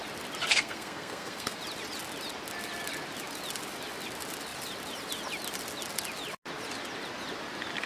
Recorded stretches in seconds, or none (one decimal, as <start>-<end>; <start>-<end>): 0.0-0.5; 1.6-7.9